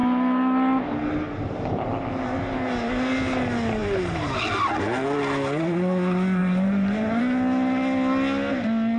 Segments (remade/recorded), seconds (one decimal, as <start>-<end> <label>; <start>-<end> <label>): 0.0-3.8 recorded; 3.8-4.4 remade; 4.4-6.4 recorded; 6.4-7.2 remade; 7.2-9.0 recorded